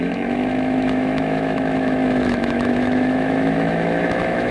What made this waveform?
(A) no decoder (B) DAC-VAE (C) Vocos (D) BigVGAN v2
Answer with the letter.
B